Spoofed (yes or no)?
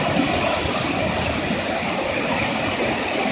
no